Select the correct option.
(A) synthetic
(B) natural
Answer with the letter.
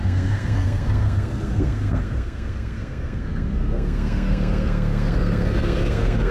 A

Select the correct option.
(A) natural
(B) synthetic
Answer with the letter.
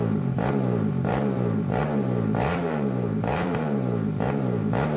B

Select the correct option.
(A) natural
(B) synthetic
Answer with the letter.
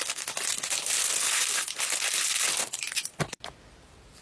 A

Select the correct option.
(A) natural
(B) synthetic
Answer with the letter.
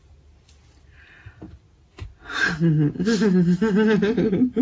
A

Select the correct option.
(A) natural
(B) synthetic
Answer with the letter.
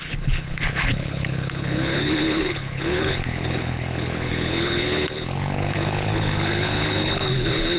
B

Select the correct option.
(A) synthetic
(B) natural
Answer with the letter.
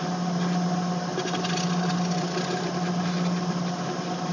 B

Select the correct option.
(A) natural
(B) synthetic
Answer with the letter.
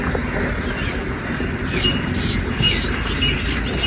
A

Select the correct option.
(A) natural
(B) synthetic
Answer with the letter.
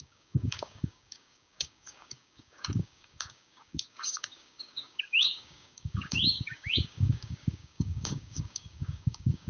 B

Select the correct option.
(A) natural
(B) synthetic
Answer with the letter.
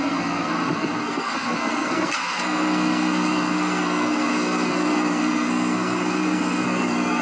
B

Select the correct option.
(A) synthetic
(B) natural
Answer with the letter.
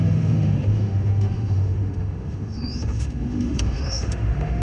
A